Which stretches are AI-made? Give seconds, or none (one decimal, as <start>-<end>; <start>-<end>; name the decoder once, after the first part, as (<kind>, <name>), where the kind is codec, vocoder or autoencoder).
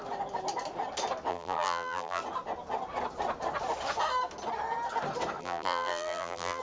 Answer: 1.3-2.2 (vocoder, BigVGAN v2); 5.4-6.6